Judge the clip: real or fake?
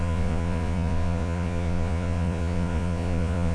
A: fake